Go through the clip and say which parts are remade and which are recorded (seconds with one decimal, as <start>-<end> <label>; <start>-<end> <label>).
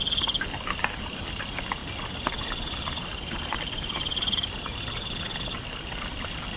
0.0-1.8 recorded; 1.8-5.8 remade; 5.8-6.6 recorded